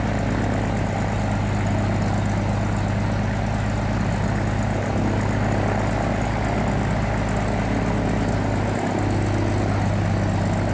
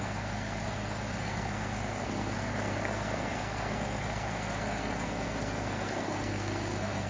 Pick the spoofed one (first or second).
second